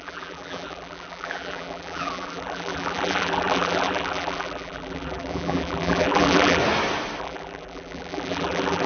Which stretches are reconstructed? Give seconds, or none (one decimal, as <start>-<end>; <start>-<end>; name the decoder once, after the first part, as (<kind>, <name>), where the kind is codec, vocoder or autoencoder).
0.0-6.6 (vocoder, BigVGAN v2); 7.2-8.9